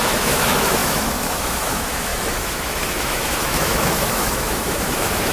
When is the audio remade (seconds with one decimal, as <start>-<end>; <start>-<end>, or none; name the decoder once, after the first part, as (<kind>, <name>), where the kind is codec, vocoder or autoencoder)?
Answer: 0.0-5.3 (autoencoder, DAC-VAE)